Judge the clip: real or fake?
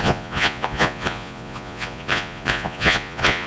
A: fake